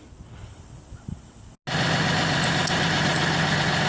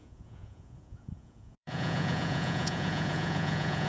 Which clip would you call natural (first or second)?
first